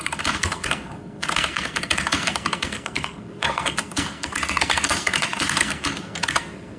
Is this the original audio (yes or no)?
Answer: no